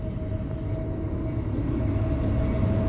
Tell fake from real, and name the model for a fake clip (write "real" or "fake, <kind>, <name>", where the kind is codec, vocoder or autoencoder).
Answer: real